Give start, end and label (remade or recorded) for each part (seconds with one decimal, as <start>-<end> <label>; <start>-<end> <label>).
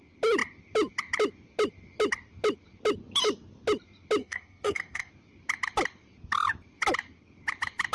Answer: 0.0-4.2 recorded; 4.2-5.1 remade; 5.1-7.9 recorded